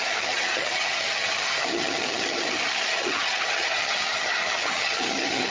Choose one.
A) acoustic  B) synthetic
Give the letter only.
B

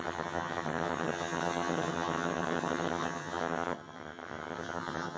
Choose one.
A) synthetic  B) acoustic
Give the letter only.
A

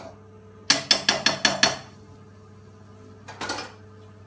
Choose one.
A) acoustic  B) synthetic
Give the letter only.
A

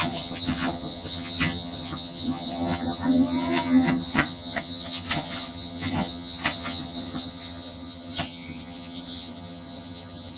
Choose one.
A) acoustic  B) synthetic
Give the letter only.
B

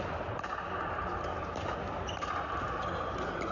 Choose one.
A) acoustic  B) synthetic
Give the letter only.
A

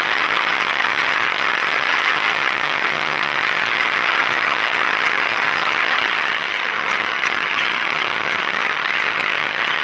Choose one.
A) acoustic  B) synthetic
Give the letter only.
B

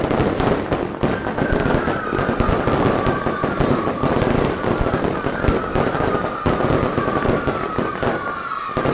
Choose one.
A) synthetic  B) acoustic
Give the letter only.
B